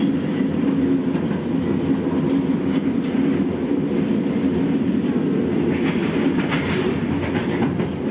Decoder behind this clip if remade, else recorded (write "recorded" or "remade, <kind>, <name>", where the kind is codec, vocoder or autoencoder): recorded